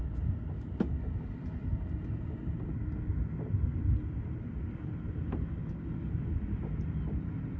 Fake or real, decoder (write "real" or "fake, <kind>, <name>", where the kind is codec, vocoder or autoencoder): real